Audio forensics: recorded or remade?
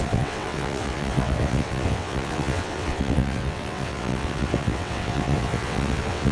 remade